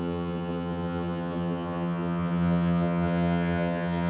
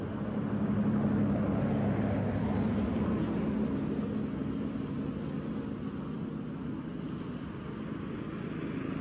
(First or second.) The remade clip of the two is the first